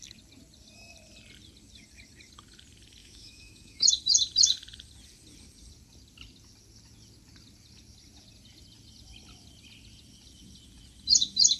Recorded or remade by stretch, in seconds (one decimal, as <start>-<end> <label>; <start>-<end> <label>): 0.0-3.0 recorded; 3.0-3.9 remade; 3.9-11.6 recorded